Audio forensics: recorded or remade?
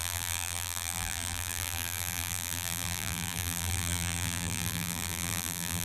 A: remade